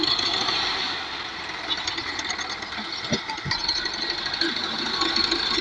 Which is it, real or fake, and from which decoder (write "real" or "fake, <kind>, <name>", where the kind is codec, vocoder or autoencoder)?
real